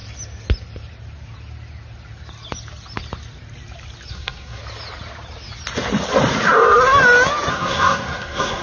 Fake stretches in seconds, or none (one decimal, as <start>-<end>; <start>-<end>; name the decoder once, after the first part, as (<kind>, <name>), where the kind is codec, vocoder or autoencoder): 4.1-4.6 (codec, SNAC); 7.5-8.6